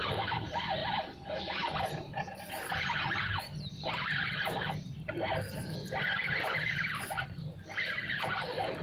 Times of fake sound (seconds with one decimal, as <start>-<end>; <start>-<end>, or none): 0.0-0.8; 1.4-4.9; 5.6-8.8